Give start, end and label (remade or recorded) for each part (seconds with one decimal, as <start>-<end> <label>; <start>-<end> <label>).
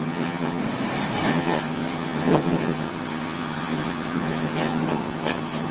0.0-0.6 remade; 0.6-1.3 recorded; 1.3-5.7 remade